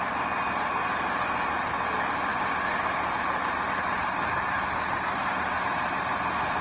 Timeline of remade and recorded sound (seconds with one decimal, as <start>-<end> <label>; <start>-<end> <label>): 0.0-6.6 recorded